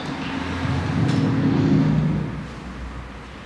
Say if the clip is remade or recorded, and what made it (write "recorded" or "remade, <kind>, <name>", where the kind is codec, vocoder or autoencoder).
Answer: recorded